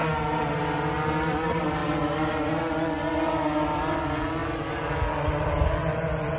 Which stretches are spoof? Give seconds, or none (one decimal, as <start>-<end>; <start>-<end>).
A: none

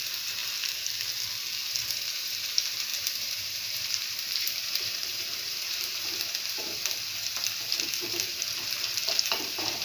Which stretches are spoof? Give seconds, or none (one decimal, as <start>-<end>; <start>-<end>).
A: 0.0-0.4; 1.7-9.8